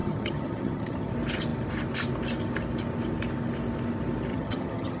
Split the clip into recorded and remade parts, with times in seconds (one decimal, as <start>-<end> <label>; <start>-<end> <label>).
0.0-1.1 remade; 1.1-4.3 recorded; 4.3-5.0 remade